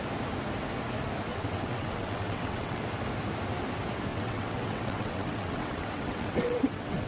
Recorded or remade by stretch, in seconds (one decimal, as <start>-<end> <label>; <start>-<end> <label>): 0.0-1.3 recorded; 1.3-2.8 remade; 2.8-4.1 recorded; 4.1-7.1 remade